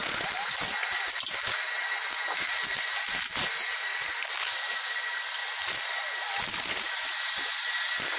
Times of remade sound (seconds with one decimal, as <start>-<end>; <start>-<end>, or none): none